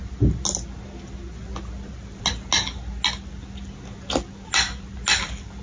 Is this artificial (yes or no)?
no